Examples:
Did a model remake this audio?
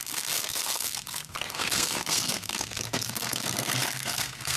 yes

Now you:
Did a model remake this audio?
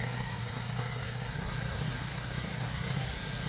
yes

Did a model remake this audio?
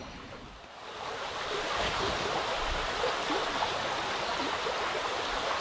no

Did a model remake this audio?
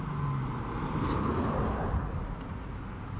no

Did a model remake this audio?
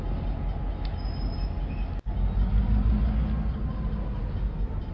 no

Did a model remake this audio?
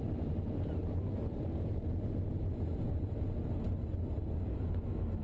no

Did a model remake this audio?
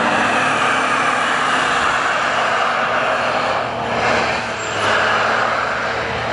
no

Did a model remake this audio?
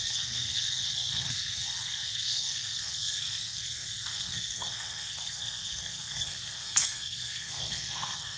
yes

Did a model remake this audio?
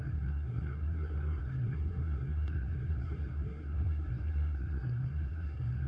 yes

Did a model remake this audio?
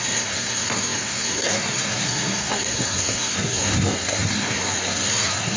yes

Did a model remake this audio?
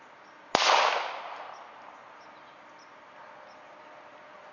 no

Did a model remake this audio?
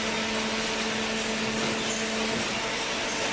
no